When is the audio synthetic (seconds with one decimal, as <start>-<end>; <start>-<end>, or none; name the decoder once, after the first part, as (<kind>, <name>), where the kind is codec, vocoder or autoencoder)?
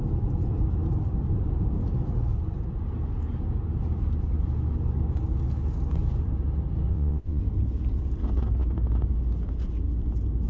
6.9-7.4 (vocoder, WaveNeXt)